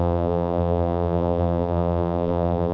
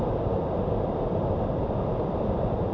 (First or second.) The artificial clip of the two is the first